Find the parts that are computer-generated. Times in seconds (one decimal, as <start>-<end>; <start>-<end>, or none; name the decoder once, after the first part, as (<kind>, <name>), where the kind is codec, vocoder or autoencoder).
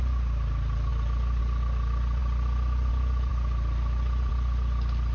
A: none